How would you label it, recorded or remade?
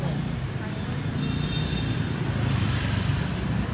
recorded